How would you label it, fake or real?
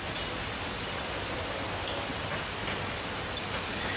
real